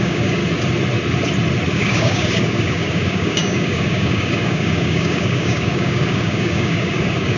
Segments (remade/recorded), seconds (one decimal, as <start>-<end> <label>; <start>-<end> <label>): 0.0-0.4 remade; 0.4-1.7 recorded; 1.7-7.4 remade